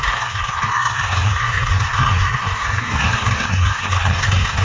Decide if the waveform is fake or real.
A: fake